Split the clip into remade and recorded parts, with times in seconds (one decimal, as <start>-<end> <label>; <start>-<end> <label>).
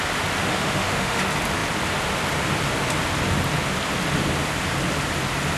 0.0-0.4 recorded; 0.4-1.2 remade; 1.2-5.6 recorded